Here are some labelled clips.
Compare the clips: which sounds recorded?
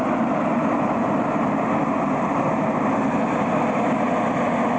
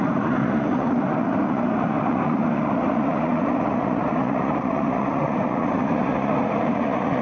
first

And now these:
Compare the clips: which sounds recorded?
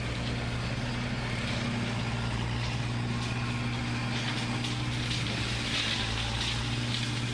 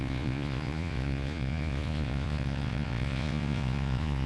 first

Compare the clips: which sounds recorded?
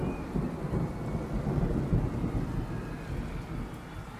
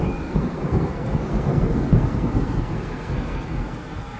first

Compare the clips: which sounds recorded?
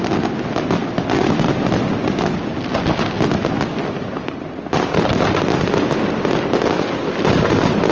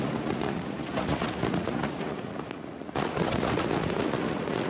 first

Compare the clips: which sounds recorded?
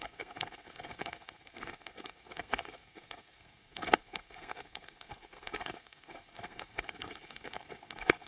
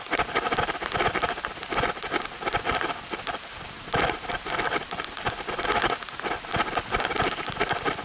second